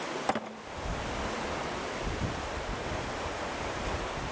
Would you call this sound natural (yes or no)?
yes